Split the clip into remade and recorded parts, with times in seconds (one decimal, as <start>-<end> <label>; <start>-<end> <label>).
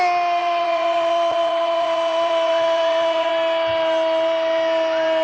0.0-0.4 recorded; 0.4-3.3 remade; 3.3-5.2 recorded